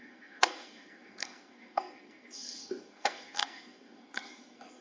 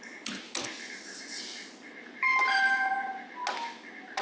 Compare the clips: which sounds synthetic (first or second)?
first